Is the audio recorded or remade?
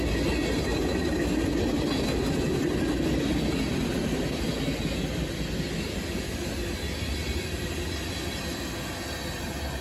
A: recorded